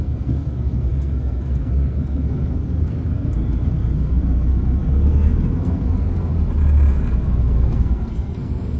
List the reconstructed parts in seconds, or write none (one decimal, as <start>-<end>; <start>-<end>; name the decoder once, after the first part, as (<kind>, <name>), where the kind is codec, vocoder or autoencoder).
0.0-6.3 (codec, SNAC); 6.9-8.8